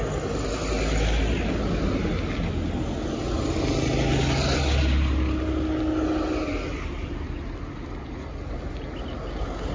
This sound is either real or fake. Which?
real